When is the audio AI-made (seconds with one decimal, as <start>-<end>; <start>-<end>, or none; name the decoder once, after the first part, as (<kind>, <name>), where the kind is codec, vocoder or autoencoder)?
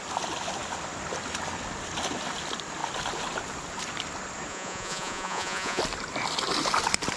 4.5-5.8 (vocoder, Vocos)